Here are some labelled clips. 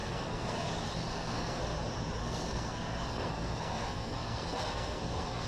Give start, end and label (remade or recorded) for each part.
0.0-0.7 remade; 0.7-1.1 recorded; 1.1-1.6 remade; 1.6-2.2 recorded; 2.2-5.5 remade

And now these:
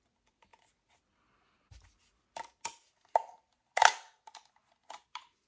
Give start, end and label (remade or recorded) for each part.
0.0-5.5 recorded

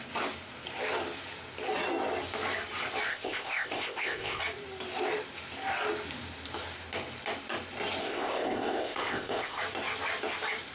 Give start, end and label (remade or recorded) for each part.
0.0-3.1 recorded; 3.1-4.4 remade; 4.4-8.0 recorded; 8.0-9.6 remade; 9.6-10.7 recorded

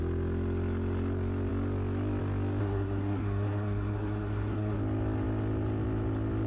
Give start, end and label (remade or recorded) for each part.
0.0-2.6 recorded; 2.6-4.8 remade; 4.8-6.5 recorded

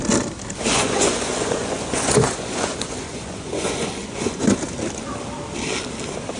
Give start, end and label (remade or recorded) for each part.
0.0-0.7 recorded; 0.7-4.5 remade; 4.5-6.4 recorded

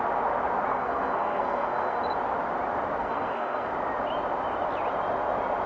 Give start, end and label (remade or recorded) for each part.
0.0-0.7 recorded; 0.7-2.0 remade; 2.0-3.0 recorded; 3.0-3.7 remade; 3.7-5.7 recorded

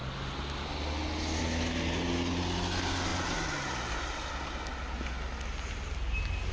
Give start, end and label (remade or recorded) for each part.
0.0-6.5 recorded